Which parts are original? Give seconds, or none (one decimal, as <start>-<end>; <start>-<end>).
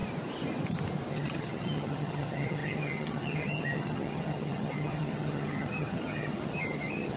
0.0-1.1